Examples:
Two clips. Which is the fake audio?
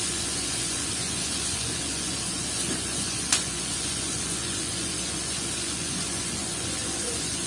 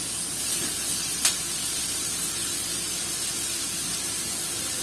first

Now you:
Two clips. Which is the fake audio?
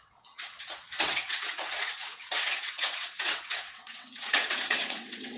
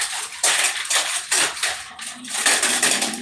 first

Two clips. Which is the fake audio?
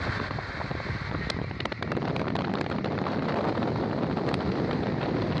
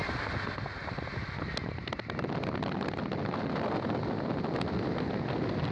first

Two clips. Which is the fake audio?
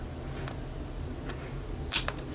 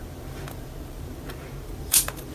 second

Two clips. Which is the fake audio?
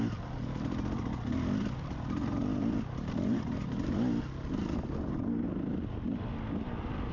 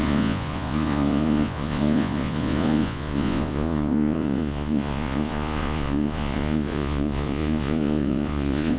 second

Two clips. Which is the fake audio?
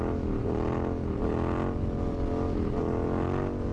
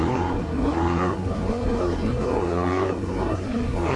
second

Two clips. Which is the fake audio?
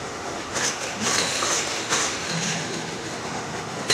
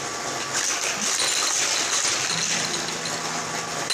first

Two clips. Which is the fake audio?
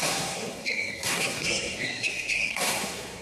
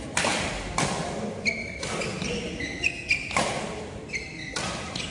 first